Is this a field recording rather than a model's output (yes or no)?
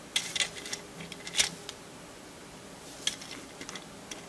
yes